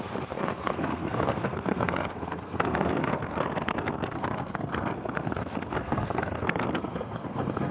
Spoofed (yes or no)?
yes